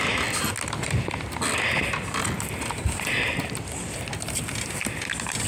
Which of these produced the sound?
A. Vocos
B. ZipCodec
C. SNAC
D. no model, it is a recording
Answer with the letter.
D